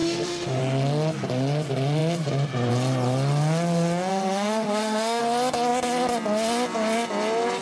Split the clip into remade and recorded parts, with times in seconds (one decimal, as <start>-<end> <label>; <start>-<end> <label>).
0.0-0.6 remade; 0.6-4.1 recorded; 4.1-5.2 remade; 5.2-7.6 recorded